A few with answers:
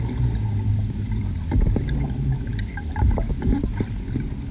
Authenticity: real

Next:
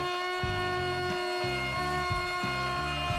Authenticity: real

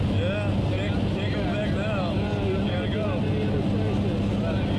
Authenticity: real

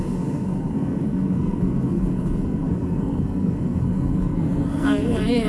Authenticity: fake